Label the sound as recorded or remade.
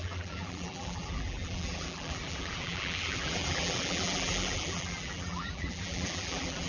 remade